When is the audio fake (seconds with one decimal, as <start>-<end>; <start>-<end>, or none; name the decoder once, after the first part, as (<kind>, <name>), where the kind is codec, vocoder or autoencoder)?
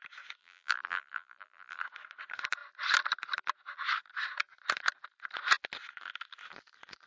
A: 0.4-1.8 (vocoder, BigVGAN v2)